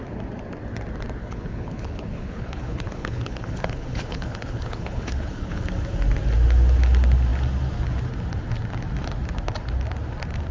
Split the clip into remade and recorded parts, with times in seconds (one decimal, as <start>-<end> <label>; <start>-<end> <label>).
0.0-1.2 recorded; 1.2-5.6 remade; 5.6-10.5 recorded